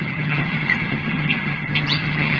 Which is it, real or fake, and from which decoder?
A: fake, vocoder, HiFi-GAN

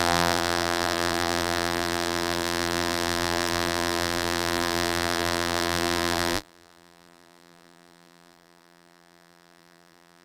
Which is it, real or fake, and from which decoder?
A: fake, vocoder, BigVGAN v2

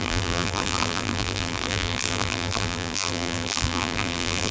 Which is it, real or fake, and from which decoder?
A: fake, vocoder, BigVGAN v2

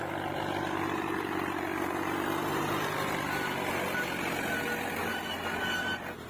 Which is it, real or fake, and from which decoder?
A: real